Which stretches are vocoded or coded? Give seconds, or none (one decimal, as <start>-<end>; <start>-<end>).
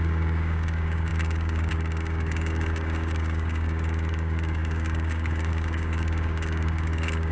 0.0-7.3